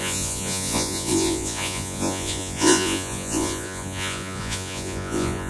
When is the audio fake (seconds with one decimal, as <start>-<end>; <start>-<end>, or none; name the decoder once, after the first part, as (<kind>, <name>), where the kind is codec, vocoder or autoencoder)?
0.0-5.5 (vocoder, Vocos)